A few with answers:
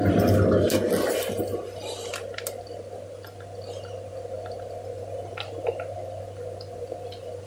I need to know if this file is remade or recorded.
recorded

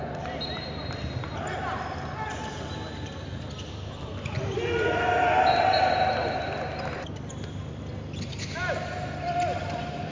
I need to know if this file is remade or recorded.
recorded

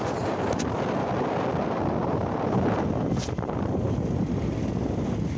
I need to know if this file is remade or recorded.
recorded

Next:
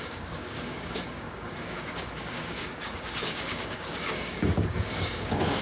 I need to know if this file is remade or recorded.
remade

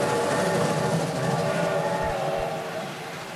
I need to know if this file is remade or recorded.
remade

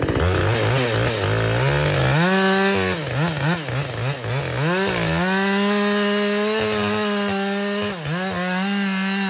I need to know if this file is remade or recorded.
recorded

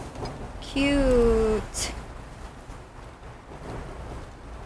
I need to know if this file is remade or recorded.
recorded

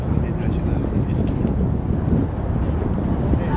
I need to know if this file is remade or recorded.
recorded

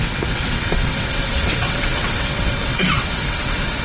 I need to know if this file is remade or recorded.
remade